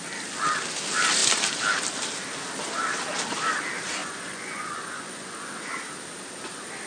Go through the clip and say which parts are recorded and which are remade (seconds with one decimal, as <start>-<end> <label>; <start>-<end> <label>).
0.0-4.0 recorded; 4.0-5.5 remade; 5.5-6.9 recorded